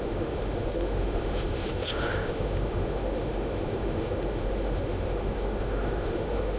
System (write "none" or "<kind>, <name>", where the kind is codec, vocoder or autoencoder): autoencoder, DAC-VAE